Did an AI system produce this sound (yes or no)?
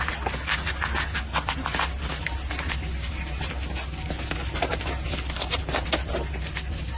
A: no